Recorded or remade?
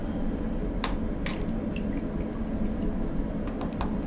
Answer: recorded